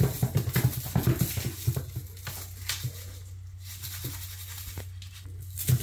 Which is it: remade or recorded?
recorded